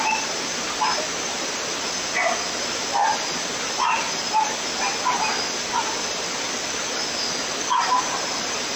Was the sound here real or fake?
real